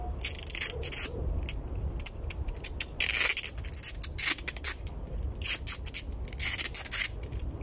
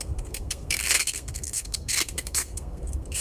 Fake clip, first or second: second